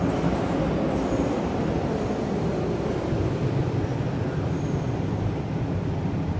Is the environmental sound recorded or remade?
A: recorded